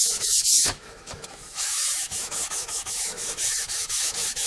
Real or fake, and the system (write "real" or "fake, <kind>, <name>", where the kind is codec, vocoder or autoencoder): fake, autoencoder, DAC-VAE